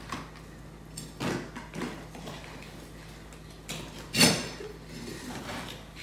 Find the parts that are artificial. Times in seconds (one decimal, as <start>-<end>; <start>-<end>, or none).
5.1-6.0